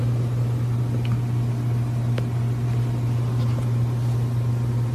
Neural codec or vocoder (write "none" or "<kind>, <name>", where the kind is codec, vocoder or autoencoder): none